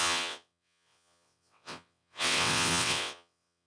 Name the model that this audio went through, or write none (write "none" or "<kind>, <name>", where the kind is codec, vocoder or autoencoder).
vocoder, WaveNeXt